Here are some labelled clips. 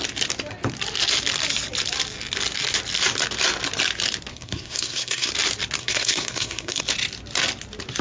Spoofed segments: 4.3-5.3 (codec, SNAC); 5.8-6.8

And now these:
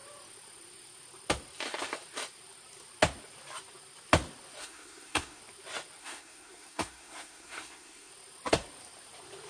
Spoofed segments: 4.6-5.4 (codec, SNAC); 6.0-8.1

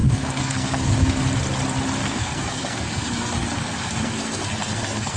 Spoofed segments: 0.0-1.2 (codec, SNAC); 2.0-5.2

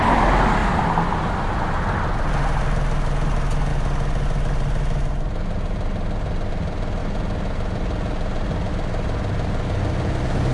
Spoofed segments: none